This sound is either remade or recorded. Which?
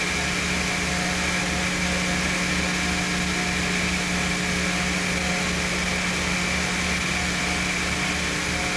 recorded